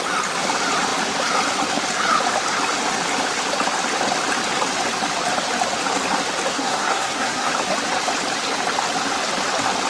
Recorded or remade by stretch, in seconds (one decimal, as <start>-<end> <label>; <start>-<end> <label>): 0.0-6.5 recorded; 6.5-7.5 remade; 7.5-9.9 recorded